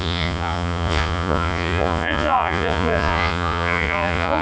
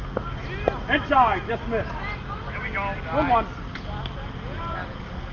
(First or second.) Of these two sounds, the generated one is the first